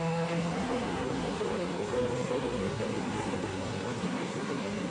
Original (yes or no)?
no